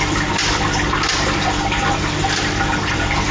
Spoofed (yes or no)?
no